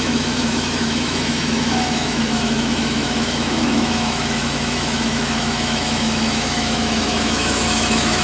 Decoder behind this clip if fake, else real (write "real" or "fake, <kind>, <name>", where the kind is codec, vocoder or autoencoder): fake, autoencoder, DAC-VAE